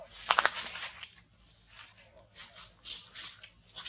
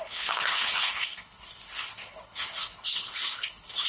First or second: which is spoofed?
second